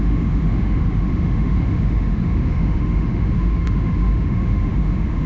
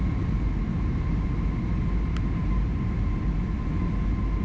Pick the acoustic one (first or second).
second